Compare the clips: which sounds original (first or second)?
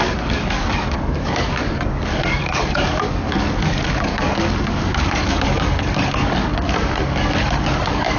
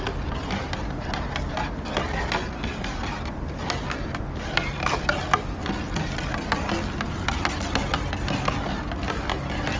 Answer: second